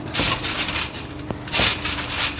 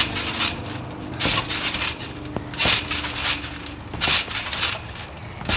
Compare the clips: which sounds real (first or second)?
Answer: second